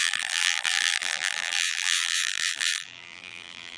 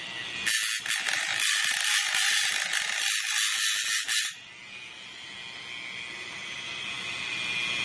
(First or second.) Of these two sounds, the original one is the second